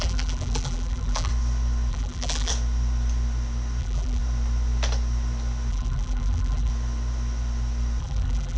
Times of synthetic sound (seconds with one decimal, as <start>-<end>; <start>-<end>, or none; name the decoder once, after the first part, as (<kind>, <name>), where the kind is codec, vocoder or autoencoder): 0.0-1.3 (vocoder, BigVGAN v2); 1.9-2.5; 3.8-4.2; 5.7-6.7; 8.0-8.6